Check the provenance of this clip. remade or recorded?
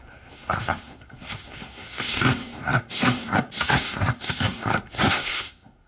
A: remade